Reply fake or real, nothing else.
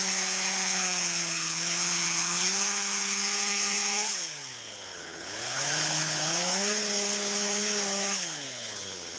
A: fake